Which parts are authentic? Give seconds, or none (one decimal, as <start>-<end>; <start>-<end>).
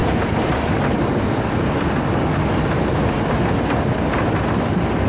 0.0-5.1